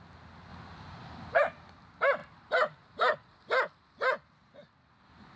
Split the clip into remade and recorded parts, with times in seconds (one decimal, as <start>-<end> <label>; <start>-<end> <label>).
0.0-0.5 recorded; 0.5-1.4 remade; 1.4-2.2 recorded; 2.2-3.9 remade; 3.9-5.4 recorded